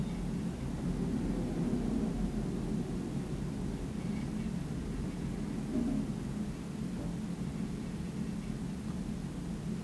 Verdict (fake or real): real